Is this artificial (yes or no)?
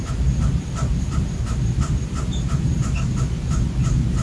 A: no